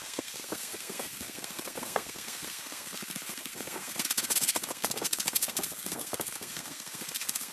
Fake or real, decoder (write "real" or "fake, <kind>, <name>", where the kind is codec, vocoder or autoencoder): fake, codec, SNAC